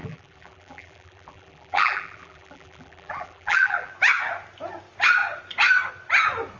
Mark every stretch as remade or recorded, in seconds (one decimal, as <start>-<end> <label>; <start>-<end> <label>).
0.0-3.9 remade; 3.9-6.6 recorded